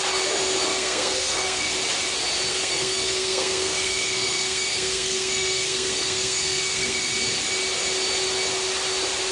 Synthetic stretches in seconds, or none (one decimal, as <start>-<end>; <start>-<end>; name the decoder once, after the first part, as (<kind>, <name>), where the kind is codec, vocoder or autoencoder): 0.7-1.7 (codec, SNAC); 2.5-7.1